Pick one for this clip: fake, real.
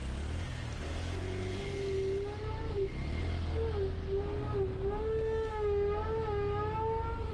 real